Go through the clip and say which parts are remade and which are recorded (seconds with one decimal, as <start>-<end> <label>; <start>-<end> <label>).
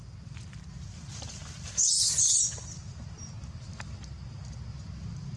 0.0-5.4 recorded